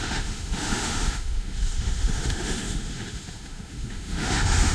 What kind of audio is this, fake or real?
fake